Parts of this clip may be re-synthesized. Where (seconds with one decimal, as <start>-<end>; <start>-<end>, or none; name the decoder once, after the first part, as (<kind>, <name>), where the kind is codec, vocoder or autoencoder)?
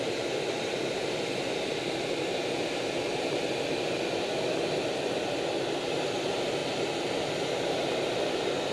none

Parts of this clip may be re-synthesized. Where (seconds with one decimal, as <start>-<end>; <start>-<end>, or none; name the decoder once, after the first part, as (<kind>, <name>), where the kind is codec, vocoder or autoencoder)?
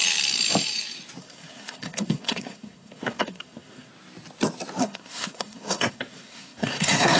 1.2-3.9 (codec, SNAC); 4.8-7.2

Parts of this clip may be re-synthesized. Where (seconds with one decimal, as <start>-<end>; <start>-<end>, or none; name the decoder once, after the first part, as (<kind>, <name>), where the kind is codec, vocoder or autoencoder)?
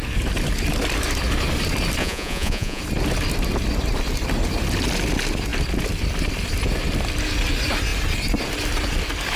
2.0-2.8 (vocoder, Vocos)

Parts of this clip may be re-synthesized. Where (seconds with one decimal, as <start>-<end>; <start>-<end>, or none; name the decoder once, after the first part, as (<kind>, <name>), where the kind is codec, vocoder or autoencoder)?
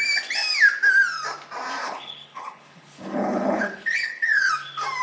1.8-4.5 (codec, HILCodec)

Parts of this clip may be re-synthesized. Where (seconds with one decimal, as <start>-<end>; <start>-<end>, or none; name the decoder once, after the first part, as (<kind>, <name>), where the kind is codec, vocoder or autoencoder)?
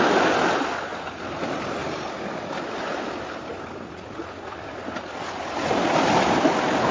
none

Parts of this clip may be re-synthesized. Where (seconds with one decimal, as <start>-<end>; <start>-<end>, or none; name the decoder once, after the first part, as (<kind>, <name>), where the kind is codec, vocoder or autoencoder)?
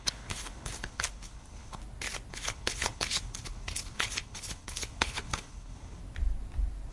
0.0-1.8 (codec, HILCodec); 2.3-6.0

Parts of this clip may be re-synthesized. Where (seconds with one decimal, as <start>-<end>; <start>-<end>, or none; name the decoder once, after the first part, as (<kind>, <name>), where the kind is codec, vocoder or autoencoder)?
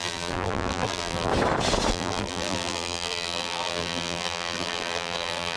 0.0-1.3 (vocoder, BigVGAN v2); 1.9-5.6